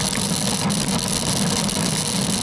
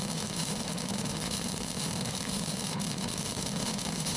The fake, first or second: second